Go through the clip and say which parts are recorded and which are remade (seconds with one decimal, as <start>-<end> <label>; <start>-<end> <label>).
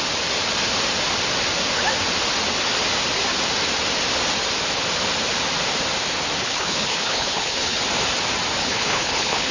0.0-6.4 recorded; 6.4-7.8 remade; 7.8-8.6 recorded; 8.6-9.5 remade